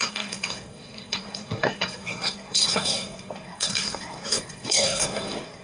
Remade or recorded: remade